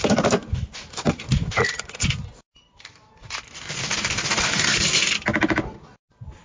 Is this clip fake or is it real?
real